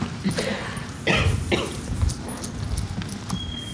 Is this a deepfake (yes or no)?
no